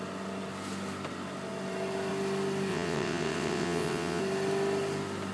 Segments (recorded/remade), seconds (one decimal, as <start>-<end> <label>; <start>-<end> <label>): 0.0-2.7 recorded; 2.7-4.2 remade; 4.2-5.3 recorded